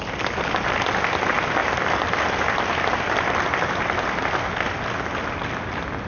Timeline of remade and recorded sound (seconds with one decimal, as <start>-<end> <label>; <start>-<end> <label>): 0.0-6.1 recorded